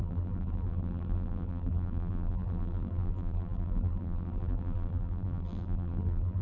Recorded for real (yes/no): no